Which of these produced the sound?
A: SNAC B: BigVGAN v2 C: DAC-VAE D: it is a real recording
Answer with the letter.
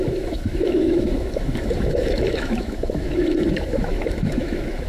C